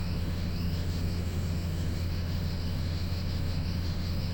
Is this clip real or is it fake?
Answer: fake